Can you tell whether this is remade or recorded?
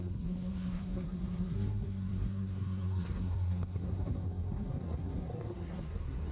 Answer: remade